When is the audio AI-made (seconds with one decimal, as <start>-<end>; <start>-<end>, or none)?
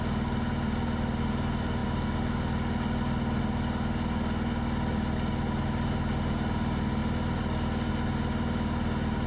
none